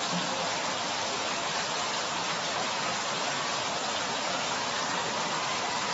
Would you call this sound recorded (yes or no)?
yes